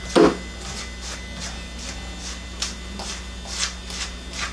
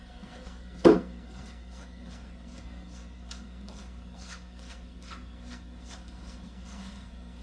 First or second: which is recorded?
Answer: first